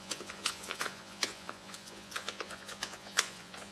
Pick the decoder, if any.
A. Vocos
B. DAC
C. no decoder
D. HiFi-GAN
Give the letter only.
A